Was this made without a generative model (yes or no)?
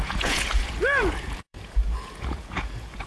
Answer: no